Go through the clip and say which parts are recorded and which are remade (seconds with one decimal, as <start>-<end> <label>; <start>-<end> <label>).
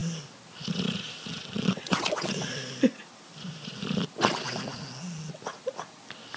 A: 0.0-1.3 recorded; 1.3-2.5 remade; 2.5-6.4 recorded